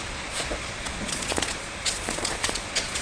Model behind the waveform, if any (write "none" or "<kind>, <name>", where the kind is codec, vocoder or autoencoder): vocoder, Vocos